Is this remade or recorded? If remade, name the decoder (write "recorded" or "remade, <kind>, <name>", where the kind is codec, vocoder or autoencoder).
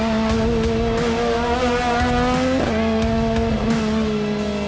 recorded